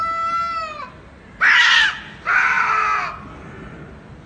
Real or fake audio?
real